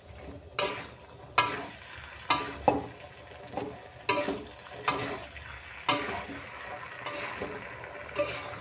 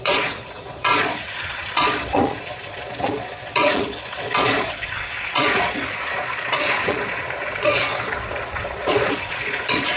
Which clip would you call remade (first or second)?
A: second